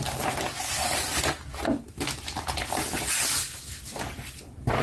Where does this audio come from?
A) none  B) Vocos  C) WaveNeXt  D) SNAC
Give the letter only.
A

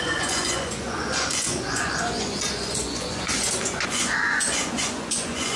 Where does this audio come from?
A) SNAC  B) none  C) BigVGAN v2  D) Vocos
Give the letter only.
D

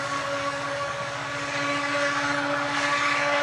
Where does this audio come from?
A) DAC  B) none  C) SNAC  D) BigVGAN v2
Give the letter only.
A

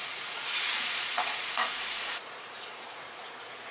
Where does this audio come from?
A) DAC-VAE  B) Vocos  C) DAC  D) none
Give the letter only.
B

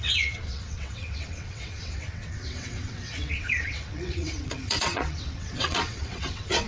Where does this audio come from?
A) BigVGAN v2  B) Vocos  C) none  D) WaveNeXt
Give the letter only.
D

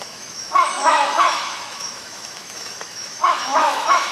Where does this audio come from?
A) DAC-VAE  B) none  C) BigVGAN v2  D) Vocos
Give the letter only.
A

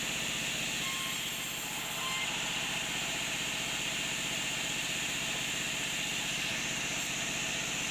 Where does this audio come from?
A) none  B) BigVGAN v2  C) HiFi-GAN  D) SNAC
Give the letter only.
A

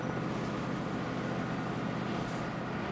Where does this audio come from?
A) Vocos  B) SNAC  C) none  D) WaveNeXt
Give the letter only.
C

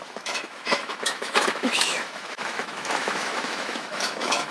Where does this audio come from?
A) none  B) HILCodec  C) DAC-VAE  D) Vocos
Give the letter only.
C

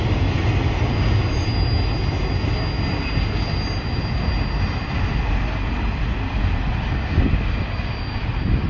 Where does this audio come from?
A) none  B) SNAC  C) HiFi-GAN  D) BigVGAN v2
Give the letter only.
A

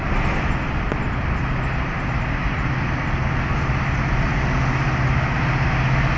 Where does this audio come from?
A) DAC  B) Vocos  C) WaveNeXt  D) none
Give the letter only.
D